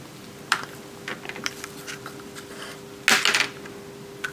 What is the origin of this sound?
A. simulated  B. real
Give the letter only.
B